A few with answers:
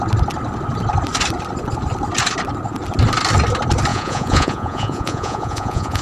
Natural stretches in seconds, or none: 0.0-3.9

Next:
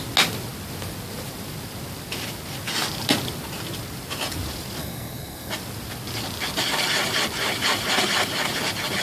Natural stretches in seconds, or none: 0.0-4.8; 5.5-9.0

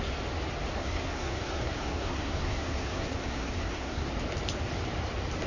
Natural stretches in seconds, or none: 0.0-0.8; 4.1-5.5

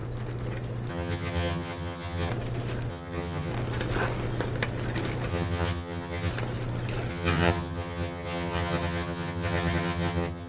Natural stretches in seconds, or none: 0.0-0.9; 2.3-2.9; 3.5-5.3; 6.3-7.1

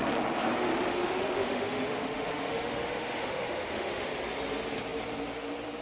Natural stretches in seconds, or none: 0.0-0.7; 4.1-5.8